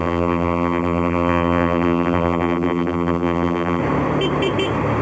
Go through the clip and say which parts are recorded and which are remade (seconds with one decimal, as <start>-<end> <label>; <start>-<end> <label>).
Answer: 0.0-3.8 remade; 3.8-5.0 recorded